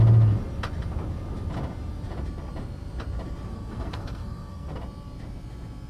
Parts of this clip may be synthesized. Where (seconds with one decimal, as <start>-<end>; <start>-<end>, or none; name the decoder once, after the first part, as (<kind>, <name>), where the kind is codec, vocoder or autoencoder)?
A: 3.5-4.8 (codec, SNAC)